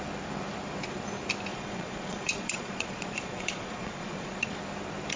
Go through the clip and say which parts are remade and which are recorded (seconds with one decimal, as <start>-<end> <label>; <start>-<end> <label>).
0.0-1.5 recorded; 1.5-4.6 remade; 4.6-5.2 recorded